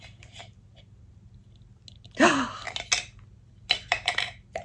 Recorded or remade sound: recorded